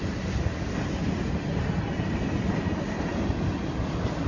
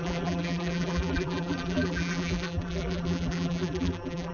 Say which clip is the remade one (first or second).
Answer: second